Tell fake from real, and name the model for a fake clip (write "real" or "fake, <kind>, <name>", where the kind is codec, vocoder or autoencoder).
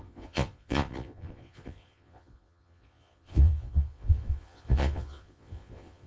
fake, vocoder, Vocos